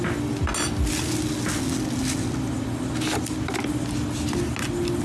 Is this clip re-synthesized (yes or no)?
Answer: no